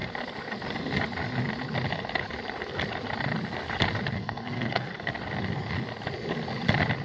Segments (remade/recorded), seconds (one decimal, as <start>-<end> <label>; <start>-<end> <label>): 0.0-4.2 recorded; 4.2-5.1 remade; 5.1-7.0 recorded